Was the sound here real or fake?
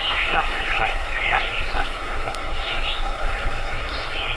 fake